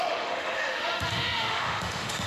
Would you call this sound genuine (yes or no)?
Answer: no